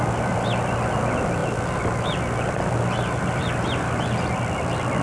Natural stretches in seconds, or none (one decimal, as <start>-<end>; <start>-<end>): 0.0-5.0